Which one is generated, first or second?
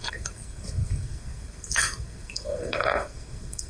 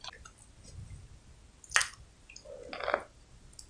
first